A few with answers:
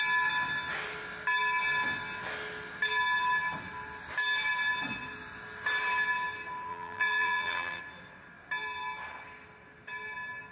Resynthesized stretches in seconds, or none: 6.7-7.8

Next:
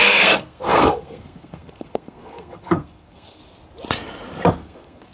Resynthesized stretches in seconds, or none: 0.0-3.4; 4.5-5.1

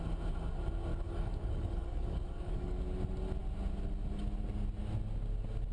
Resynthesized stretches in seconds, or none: 0.9-2.8

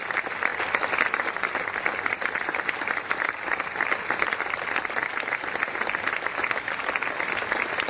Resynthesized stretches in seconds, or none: none